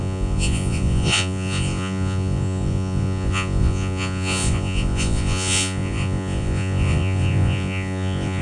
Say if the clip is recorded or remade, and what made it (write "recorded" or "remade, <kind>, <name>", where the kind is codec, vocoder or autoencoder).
remade, vocoder, Vocos